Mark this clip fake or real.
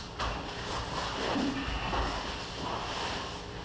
real